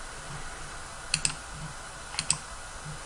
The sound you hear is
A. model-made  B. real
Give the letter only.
B